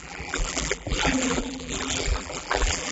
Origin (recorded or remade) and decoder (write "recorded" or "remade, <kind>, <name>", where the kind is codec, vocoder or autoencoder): remade, vocoder, BigVGAN v2